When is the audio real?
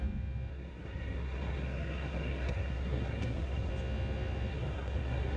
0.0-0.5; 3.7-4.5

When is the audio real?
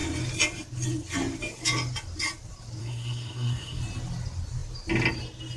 0.0-2.8; 3.8-5.6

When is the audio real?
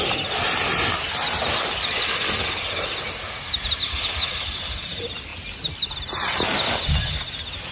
0.0-7.7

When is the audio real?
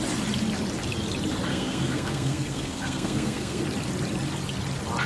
0.0-1.5; 3.6-5.1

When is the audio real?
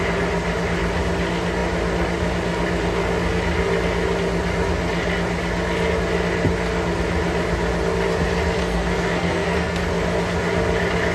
0.0-8.6; 9.8-11.1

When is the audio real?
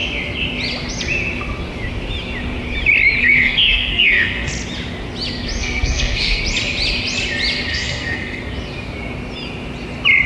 0.0-3.2; 4.5-5.6; 6.4-7.7; 8.4-10.3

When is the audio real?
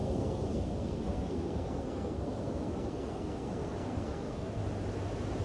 4.6-5.4